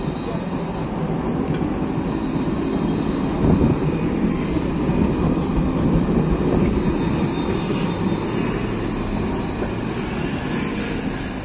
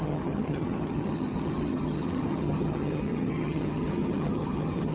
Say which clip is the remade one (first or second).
second